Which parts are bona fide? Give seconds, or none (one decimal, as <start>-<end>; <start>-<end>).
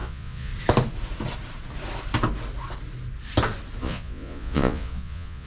0.5-3.8